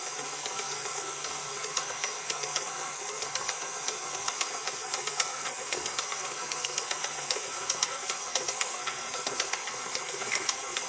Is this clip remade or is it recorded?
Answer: remade